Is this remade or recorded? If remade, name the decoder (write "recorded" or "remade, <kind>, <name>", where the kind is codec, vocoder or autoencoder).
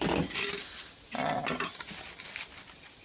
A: recorded